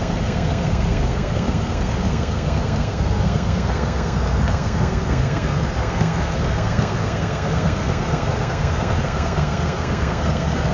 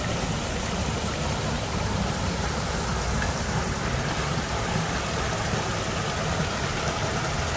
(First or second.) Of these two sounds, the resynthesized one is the first